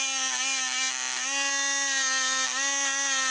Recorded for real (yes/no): yes